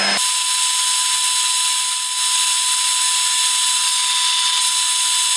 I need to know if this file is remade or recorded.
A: recorded